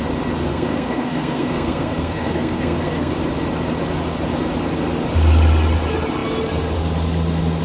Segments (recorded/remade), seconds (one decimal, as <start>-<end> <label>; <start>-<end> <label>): 0.0-0.5 recorded; 0.5-3.1 remade; 3.1-7.6 recorded